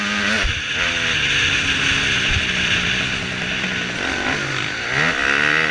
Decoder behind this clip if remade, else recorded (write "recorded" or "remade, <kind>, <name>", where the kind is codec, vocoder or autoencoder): recorded